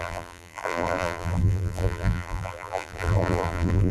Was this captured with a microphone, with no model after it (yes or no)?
no